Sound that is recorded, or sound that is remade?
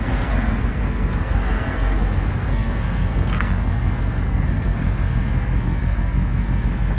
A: remade